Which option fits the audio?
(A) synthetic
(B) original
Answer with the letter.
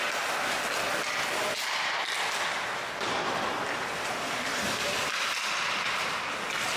B